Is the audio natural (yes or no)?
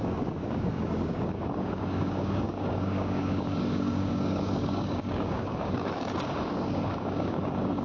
no